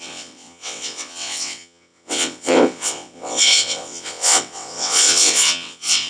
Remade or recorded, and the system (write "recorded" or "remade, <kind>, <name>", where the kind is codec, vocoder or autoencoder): remade, vocoder, WaveNeXt